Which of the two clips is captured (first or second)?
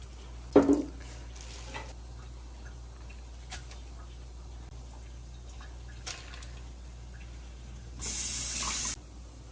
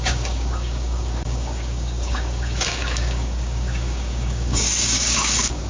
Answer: first